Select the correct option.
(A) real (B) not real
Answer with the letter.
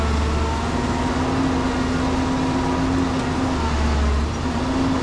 A